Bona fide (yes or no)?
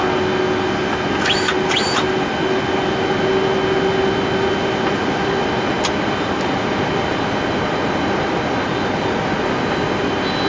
yes